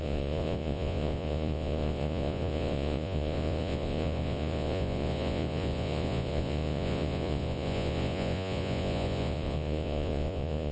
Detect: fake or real fake